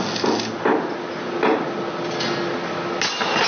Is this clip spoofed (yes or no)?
no